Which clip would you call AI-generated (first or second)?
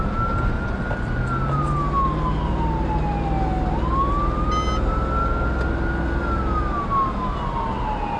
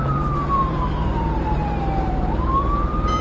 second